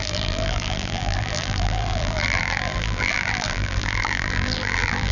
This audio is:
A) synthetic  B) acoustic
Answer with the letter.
A